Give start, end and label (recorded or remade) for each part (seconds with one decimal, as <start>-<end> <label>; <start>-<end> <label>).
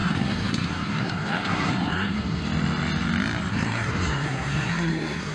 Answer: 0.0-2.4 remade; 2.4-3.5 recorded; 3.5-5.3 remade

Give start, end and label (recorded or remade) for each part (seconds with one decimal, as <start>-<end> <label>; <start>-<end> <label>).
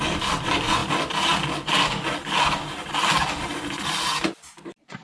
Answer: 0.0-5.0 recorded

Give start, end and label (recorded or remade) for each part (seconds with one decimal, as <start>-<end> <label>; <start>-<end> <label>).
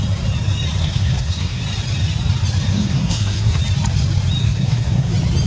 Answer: 0.0-0.8 recorded; 0.8-1.6 remade; 1.6-2.7 recorded; 2.7-3.6 remade; 3.6-4.4 recorded; 4.4-5.1 remade; 5.1-5.5 recorded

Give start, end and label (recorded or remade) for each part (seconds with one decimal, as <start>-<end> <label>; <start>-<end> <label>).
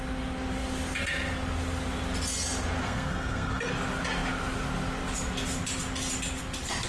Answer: 0.0-2.8 recorded; 2.8-3.7 remade; 3.7-6.9 recorded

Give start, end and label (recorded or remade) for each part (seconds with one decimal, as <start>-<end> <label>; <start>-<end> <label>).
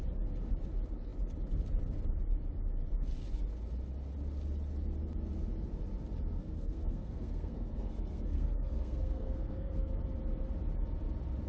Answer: 0.0-6.4 recorded; 6.4-10.0 remade; 10.0-11.5 recorded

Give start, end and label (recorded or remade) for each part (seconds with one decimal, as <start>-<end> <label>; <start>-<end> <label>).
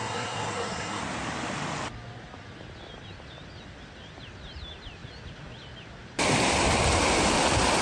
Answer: 0.0-1.0 remade; 1.0-7.8 recorded